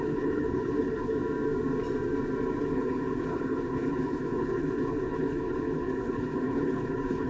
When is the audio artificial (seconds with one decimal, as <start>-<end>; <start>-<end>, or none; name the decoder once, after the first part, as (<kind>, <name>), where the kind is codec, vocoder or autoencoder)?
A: 0.0-1.1 (codec, HILCodec); 2.6-7.3